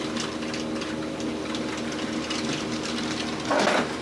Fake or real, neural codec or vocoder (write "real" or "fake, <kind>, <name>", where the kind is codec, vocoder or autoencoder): real